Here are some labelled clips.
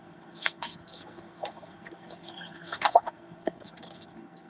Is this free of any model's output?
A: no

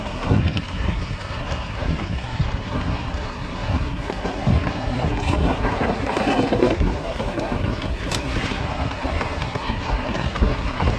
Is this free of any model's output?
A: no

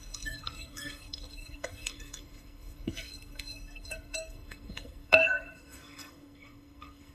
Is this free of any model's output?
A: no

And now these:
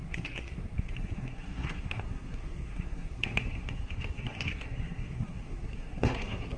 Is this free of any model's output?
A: no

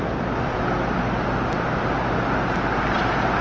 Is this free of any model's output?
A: yes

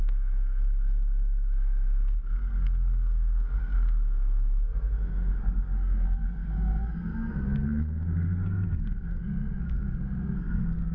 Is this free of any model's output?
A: no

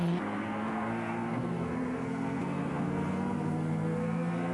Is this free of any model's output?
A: no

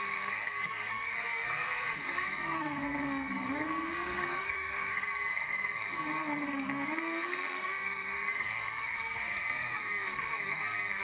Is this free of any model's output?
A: no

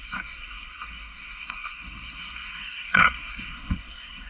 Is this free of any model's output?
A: no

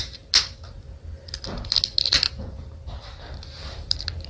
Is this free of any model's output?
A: yes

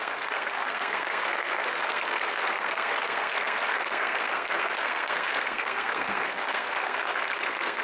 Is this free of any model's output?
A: no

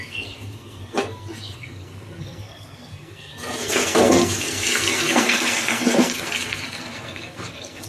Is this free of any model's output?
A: no